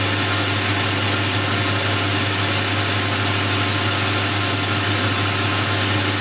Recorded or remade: recorded